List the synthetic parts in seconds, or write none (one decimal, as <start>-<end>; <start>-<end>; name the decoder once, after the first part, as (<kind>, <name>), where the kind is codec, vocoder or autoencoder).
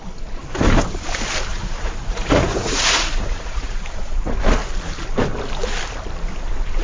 1.5-3.8 (vocoder, Vocos)